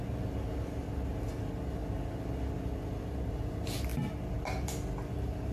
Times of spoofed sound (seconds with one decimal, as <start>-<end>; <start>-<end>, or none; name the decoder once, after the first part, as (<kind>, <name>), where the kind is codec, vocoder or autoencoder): none